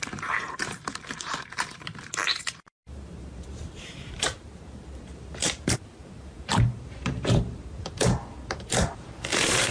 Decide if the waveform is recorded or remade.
remade